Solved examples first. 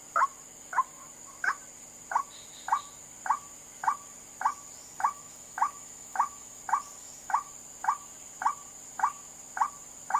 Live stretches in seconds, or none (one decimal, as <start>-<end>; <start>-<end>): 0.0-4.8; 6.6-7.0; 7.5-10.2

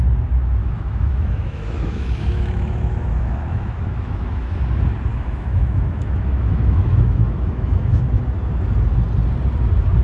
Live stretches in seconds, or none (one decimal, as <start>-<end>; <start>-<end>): 0.0-0.6; 4.6-5.1; 8.2-10.0

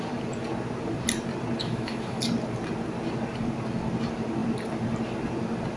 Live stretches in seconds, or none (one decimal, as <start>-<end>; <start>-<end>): 0.0-1.6; 2.2-5.8